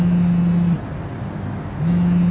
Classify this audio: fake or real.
real